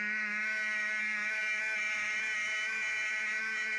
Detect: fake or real fake